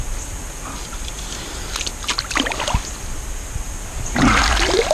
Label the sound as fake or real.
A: real